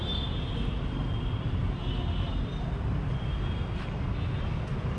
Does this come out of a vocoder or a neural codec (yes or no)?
no